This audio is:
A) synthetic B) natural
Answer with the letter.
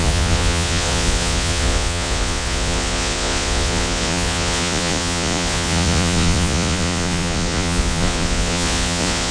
A